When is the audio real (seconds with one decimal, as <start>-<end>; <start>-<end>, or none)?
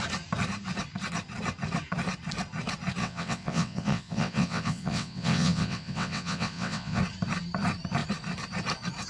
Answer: 0.0-3.0; 7.0-9.1